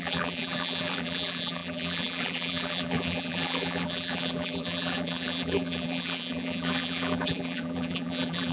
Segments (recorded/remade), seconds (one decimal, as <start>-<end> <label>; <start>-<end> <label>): 0.0-8.5 remade